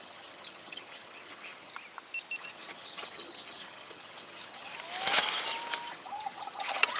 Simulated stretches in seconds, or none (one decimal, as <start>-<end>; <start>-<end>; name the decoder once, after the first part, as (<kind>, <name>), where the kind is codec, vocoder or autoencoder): 0.0-1.7 (vocoder, HiFi-GAN); 2.4-4.7; 5.9-7.0